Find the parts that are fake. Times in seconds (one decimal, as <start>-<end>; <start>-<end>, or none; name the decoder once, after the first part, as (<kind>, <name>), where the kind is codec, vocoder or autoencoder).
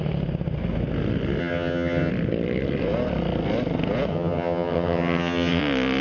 1.4-2.1 (vocoder, HiFi-GAN); 4.1-5.6